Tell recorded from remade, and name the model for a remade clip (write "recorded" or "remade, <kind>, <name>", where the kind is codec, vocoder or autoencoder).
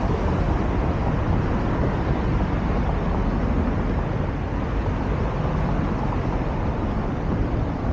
recorded